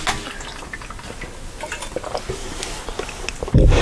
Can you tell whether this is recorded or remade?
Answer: recorded